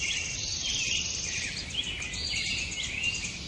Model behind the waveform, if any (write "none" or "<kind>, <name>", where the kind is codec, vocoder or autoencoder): none